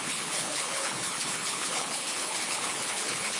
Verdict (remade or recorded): remade